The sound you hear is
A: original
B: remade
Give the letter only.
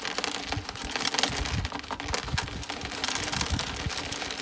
A